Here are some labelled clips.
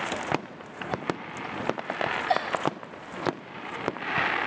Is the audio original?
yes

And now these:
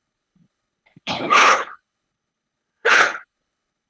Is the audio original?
no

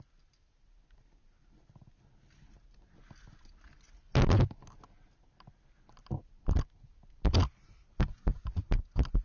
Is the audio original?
yes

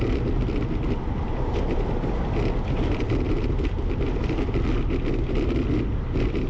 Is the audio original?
yes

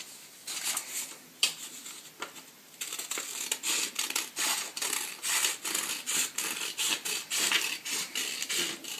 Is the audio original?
yes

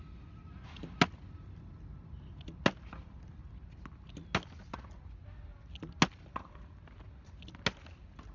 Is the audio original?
yes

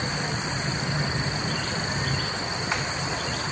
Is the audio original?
yes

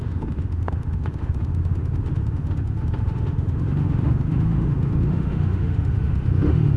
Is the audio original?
no